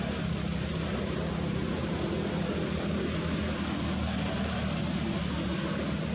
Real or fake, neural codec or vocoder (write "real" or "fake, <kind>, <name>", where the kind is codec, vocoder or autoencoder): real